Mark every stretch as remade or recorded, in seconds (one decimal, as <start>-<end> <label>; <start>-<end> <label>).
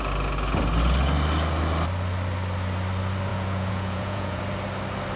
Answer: 0.0-3.3 recorded; 3.3-4.4 remade; 4.4-5.2 recorded